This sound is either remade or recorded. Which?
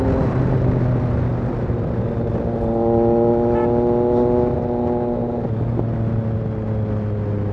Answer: recorded